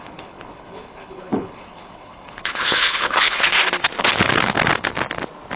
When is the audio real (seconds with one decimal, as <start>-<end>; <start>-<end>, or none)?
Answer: 3.5-4.0; 4.5-5.6